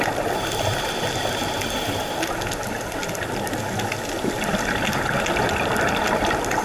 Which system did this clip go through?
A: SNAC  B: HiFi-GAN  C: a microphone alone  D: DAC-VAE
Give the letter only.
C